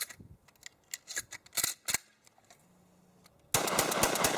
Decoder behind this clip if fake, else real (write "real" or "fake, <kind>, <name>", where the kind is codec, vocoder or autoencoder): real